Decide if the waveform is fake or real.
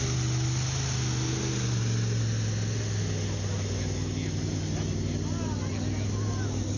real